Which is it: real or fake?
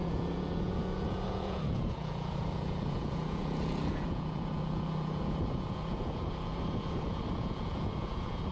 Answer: fake